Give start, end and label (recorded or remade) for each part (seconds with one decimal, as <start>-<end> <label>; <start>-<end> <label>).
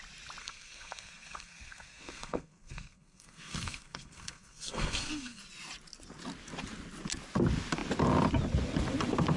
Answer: 0.0-0.4 recorded; 0.4-5.4 remade; 5.4-9.4 recorded